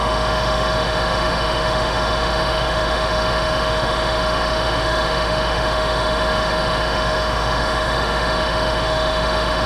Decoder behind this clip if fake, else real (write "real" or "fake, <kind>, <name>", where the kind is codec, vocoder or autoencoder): fake, autoencoder, DAC-VAE